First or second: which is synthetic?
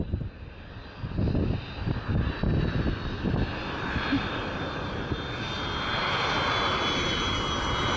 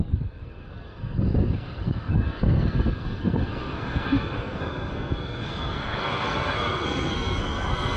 second